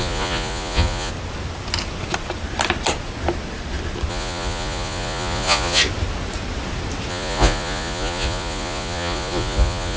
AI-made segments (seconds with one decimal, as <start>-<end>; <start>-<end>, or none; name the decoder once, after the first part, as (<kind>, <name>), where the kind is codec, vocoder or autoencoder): 0.0-1.1 (vocoder, Vocos); 4.1-5.8; 7.1-10.0

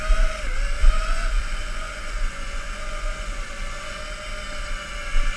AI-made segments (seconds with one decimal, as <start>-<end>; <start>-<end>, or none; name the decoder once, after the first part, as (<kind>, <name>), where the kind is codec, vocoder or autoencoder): 0.8-4.0 (vocoder, Vocos)